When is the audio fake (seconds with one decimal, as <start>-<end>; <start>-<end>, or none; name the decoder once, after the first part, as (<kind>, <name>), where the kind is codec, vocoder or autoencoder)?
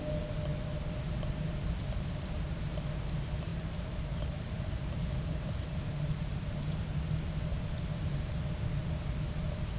3.5-7.1 (vocoder, BigVGAN v2)